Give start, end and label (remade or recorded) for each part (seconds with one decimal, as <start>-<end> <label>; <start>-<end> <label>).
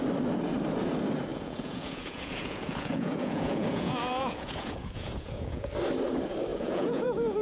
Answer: 0.0-1.3 recorded; 1.3-5.7 remade; 5.7-6.5 recorded; 6.5-7.4 remade